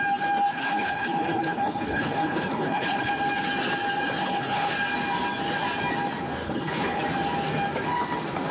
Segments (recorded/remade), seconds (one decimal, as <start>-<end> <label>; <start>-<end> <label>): 0.0-0.5 recorded; 0.5-3.1 remade; 3.1-4.2 recorded; 4.2-4.7 remade; 4.7-6.4 recorded; 6.4-7.0 remade; 7.0-8.5 recorded

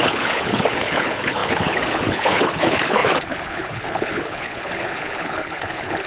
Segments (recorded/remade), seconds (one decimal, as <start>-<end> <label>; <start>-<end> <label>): 0.0-6.1 remade

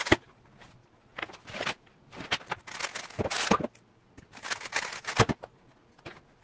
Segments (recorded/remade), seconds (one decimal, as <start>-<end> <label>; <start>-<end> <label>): 0.0-6.4 recorded

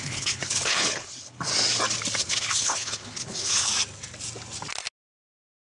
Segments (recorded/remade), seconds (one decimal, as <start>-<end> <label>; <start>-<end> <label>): 0.0-1.5 remade; 1.5-2.2 recorded; 2.2-3.7 remade; 3.7-5.7 recorded

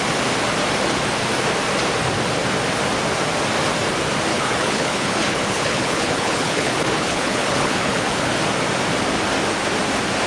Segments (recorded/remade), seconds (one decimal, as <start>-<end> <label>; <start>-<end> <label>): 0.0-4.3 recorded; 4.3-8.3 remade; 8.3-10.3 recorded